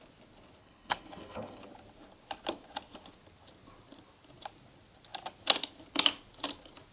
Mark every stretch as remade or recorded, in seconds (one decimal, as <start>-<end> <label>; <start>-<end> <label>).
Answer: 0.0-0.6 recorded; 0.6-1.6 remade; 1.6-6.9 recorded